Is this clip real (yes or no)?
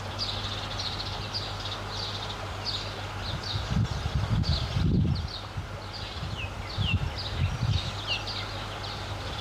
yes